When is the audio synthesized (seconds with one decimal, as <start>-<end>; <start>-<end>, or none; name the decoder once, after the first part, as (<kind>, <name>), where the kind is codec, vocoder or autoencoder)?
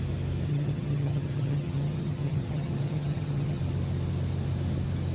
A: 0.5-3.6 (vocoder, HiFi-GAN)